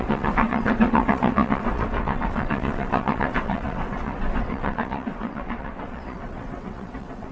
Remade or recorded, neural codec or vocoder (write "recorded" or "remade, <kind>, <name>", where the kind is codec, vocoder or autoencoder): remade, vocoder, WaveNeXt